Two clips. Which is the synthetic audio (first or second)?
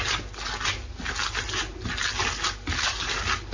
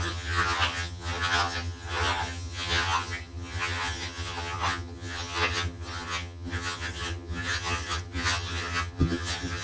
second